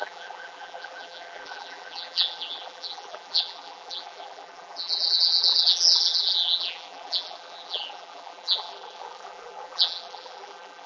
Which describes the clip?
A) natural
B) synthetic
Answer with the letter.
B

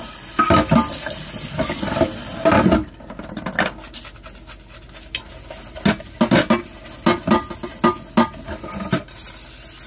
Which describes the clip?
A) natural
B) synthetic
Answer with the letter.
A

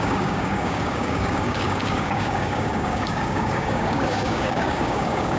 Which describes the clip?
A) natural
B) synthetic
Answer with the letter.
B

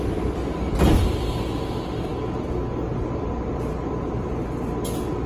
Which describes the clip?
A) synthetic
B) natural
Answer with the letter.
B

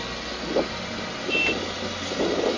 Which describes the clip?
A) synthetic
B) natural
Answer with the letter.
B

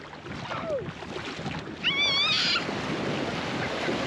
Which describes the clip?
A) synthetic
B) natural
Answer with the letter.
B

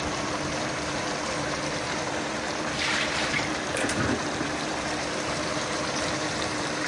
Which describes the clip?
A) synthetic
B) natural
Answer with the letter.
A